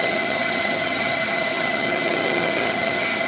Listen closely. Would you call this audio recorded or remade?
remade